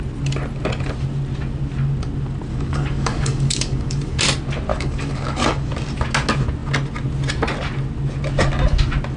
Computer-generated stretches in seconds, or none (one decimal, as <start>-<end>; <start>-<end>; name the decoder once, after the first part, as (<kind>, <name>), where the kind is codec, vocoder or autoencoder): 2.5-4.2 (codec, DAC); 4.7-5.7